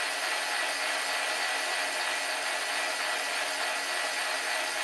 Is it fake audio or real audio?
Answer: real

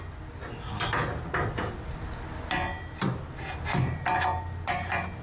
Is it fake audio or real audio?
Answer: real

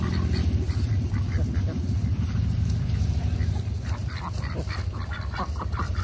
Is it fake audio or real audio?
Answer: fake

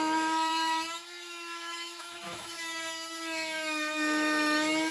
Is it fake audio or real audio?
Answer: fake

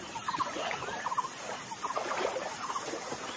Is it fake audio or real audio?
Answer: fake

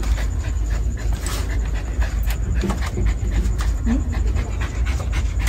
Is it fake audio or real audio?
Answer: real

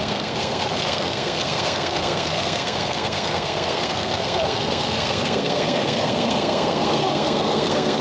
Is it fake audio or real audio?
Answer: fake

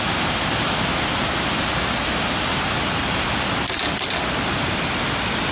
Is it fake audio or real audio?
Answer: real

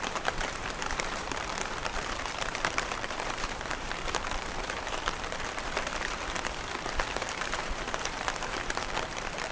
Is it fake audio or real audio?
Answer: fake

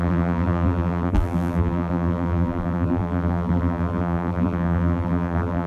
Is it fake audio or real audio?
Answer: fake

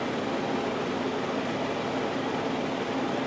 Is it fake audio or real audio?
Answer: real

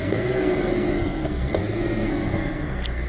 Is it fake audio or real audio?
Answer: fake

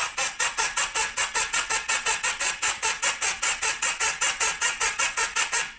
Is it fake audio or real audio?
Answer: fake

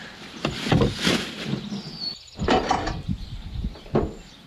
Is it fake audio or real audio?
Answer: real